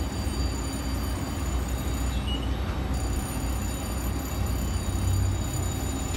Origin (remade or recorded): recorded